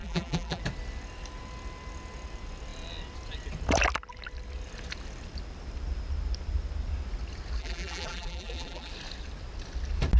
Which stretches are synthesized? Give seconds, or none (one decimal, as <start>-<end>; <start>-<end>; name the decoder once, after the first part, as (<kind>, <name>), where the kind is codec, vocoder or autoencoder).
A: 0.0-0.6 (vocoder, BigVGAN v2); 7.6-8.9